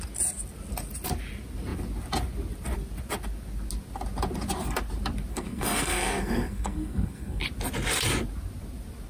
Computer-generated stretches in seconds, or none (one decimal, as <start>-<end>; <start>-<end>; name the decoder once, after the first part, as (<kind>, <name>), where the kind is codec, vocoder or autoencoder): 5.3-7.4 (codec, SNAC)